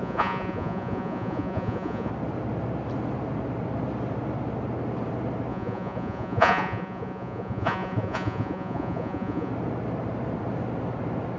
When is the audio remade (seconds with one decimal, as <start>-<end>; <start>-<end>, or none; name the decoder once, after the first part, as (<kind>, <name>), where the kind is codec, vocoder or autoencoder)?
0.0-2.1 (vocoder, Vocos); 5.5-9.5